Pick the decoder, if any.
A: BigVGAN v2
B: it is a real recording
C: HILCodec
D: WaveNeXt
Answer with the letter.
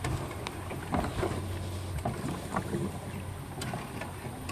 B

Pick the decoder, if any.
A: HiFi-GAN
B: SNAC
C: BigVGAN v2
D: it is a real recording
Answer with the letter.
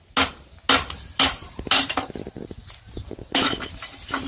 D